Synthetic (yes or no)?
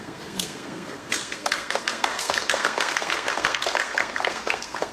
yes